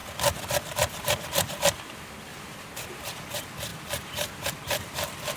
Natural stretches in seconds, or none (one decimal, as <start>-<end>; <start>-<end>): 0.0-2.3; 2.9-3.7; 4.5-5.4